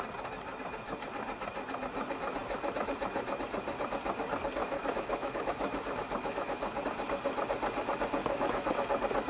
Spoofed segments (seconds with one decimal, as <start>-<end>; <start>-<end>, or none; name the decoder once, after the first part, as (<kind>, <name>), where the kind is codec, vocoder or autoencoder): 4.6-6.8 (autoencoder, DAC-VAE); 8.2-8.7